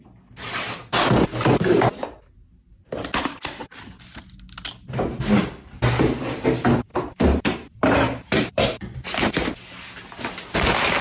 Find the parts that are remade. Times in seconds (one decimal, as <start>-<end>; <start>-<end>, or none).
6.9-9.5